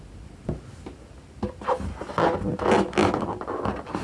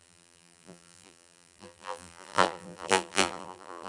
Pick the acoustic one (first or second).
first